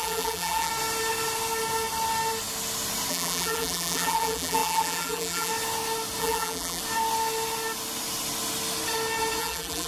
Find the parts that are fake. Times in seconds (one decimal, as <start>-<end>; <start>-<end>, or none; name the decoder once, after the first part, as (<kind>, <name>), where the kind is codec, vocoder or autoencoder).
0.0-0.7 (vocoder, BigVGAN v2); 3.1-5.5; 6.2-6.8; 9.4-9.9